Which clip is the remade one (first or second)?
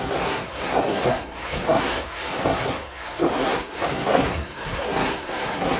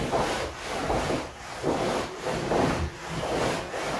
first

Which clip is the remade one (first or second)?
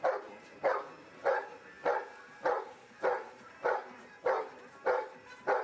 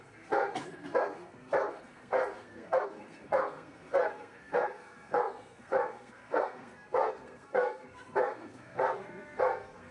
second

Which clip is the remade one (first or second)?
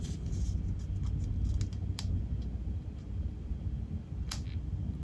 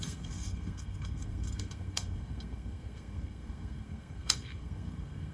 second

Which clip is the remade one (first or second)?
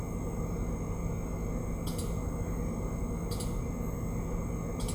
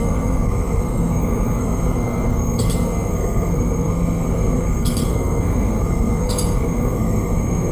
second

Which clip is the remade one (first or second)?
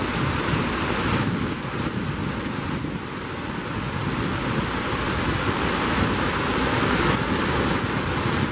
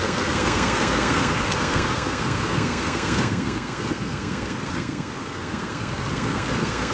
second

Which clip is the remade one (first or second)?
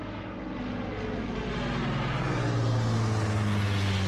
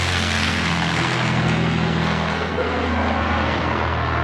second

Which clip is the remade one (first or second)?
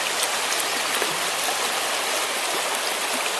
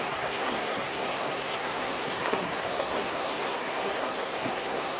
second